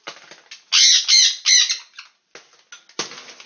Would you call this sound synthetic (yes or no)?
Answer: no